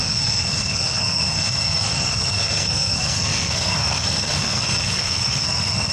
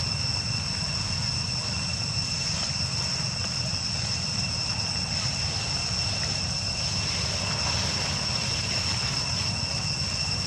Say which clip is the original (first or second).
second